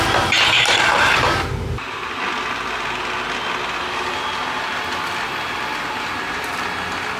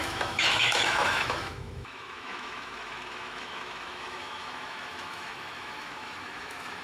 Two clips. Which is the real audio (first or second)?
first